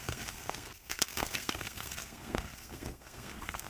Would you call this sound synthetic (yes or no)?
yes